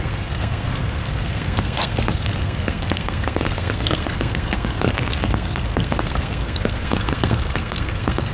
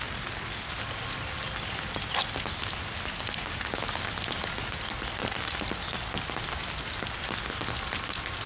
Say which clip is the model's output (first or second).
first